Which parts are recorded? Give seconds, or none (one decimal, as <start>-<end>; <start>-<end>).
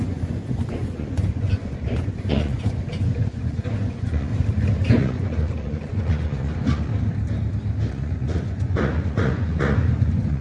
4.3-4.9; 6.9-7.9